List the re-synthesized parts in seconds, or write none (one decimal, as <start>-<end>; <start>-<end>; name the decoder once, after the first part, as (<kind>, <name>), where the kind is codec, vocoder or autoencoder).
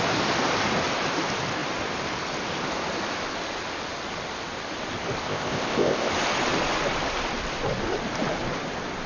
5.2-6.1 (codec, ZipCodec)